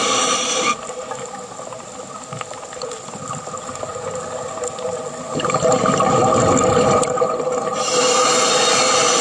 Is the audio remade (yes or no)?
no